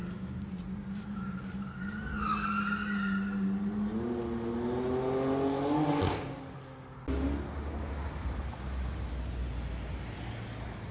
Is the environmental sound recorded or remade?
recorded